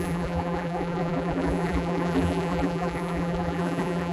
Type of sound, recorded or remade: remade